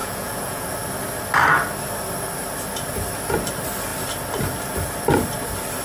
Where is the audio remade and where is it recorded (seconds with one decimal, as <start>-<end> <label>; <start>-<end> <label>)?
0.0-0.7 remade; 0.7-5.8 recorded